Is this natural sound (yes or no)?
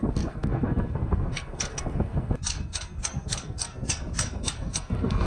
no